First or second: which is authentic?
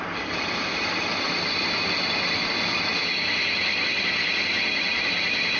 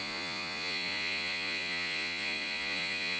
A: first